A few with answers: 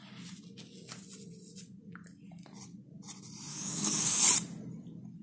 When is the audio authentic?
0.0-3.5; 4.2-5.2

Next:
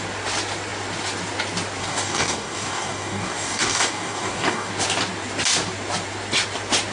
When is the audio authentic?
0.0-1.8; 4.7-6.9